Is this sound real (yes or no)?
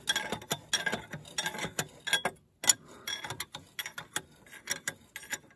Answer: yes